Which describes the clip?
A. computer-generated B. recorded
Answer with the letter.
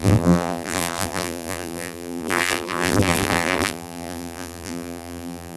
A